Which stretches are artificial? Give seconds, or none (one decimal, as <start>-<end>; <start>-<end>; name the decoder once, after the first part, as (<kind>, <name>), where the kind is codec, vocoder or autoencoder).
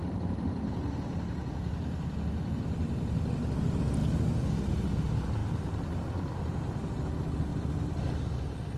0.0-1.5 (vocoder, BigVGAN v2); 7.5-8.3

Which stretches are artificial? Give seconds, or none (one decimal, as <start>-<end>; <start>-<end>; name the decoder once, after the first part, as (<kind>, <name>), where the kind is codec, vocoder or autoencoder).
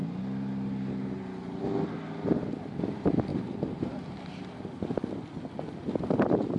none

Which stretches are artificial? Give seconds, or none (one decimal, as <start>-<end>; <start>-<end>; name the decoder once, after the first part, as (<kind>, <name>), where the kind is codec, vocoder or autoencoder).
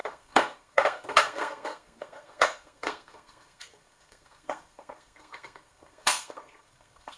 0.0-7.2 (codec, SNAC)